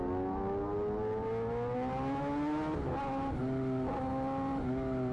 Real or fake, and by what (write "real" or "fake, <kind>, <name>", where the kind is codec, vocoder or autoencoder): real